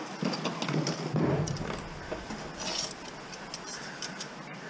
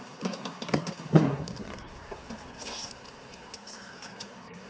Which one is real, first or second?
first